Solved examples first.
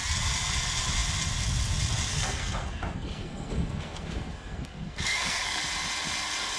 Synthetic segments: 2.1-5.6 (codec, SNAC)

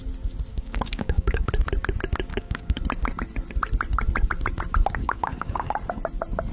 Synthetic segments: 0.5-1.4 (codec, DAC); 2.3-2.8; 5.0-5.7